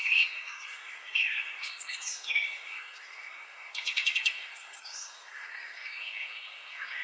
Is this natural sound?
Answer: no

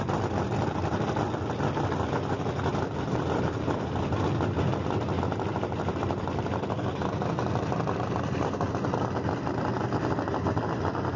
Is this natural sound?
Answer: yes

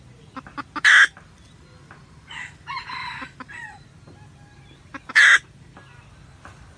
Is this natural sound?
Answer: yes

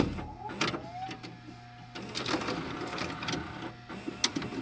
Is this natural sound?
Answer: yes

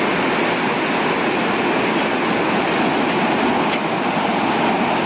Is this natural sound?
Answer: yes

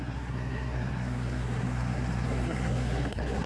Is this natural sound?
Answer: no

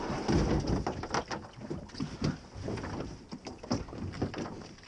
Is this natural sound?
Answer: yes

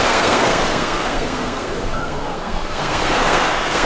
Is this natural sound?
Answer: no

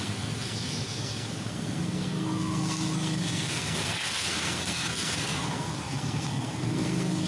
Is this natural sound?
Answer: no